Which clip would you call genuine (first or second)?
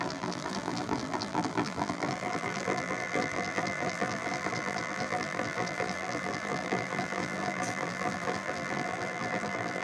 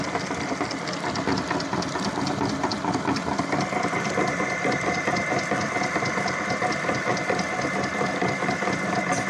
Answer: second